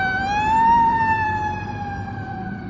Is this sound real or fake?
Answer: fake